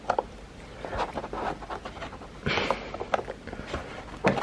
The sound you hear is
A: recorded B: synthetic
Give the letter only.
A